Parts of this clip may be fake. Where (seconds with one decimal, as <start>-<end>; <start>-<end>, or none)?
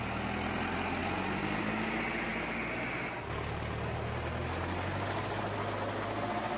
none